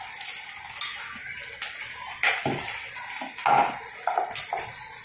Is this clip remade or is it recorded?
recorded